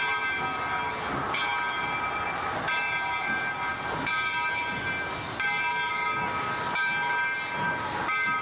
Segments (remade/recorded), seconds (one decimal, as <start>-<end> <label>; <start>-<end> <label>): 0.0-8.4 recorded